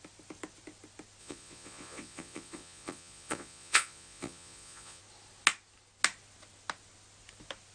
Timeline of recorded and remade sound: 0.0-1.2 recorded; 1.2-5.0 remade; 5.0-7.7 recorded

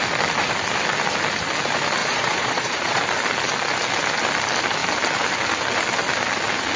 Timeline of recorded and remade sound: 0.0-2.0 recorded; 2.0-3.0 remade; 3.0-6.8 recorded